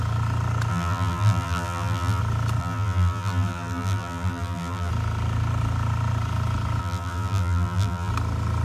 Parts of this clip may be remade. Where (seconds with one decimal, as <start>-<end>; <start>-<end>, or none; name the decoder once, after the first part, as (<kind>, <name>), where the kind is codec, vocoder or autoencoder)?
0.7-2.2 (vocoder, BigVGAN v2); 2.6-4.9; 6.8-8.1